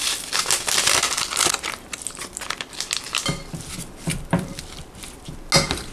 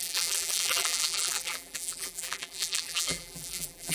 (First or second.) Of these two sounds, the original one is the first